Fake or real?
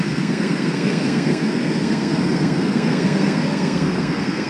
fake